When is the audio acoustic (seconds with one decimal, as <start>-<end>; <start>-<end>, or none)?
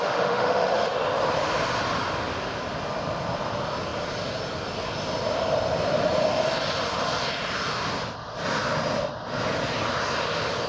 0.9-10.7